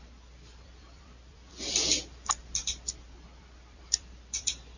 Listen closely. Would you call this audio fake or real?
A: fake